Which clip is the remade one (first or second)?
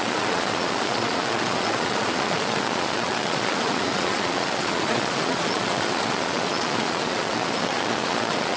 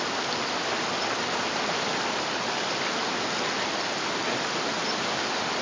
first